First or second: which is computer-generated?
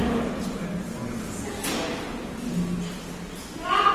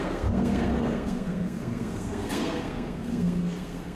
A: second